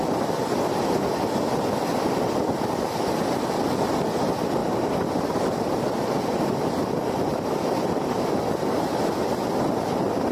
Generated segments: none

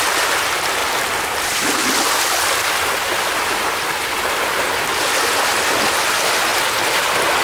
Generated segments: none

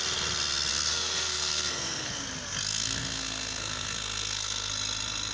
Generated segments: 0.7-2.1 (codec, SNAC); 2.7-4.7